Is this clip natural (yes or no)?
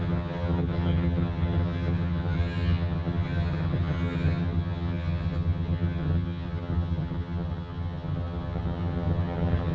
no